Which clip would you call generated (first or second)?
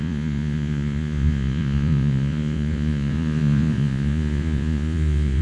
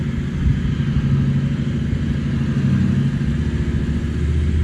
first